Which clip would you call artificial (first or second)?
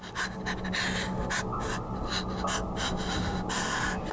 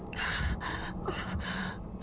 second